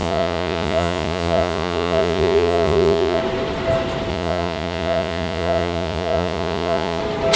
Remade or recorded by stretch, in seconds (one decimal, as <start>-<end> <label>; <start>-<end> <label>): 0.0-3.2 remade; 3.2-4.1 recorded; 4.1-7.0 remade; 7.0-7.4 recorded